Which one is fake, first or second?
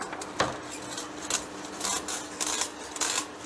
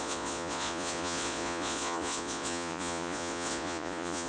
second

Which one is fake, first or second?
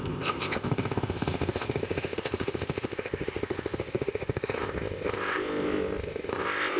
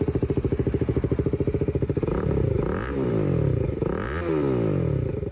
first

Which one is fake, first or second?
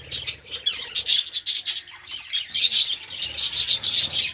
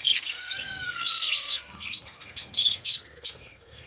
second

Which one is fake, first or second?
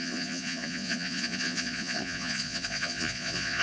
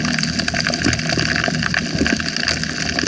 first